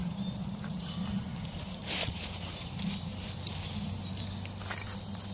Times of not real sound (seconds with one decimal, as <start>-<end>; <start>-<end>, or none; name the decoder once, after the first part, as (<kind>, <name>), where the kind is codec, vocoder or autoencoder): 0.0-3.2 (vocoder, BigVGAN v2)